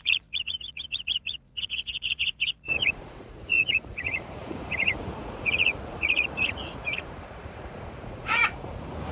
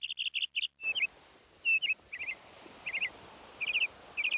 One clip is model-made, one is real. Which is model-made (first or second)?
first